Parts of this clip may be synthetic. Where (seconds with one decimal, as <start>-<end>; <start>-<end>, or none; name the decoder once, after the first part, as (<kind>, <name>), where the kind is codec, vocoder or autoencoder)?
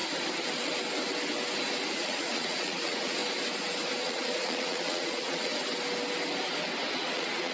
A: 1.9-3.2 (vocoder, Vocos); 4.0-5.5; 6.9-7.5